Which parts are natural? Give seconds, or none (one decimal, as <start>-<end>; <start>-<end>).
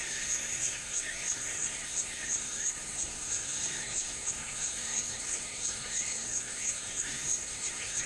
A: none